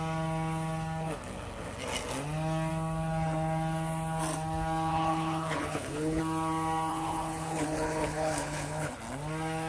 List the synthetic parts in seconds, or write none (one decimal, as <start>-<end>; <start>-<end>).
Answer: 4.9-6.2; 6.9-8.9